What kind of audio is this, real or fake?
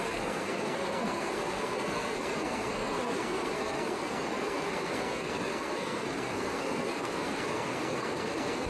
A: fake